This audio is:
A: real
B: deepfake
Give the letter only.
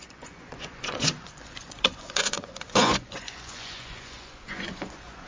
B